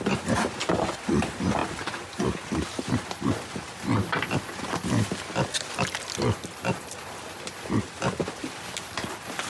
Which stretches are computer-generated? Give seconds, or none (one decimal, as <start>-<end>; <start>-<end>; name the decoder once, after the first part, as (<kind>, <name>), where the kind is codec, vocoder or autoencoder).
none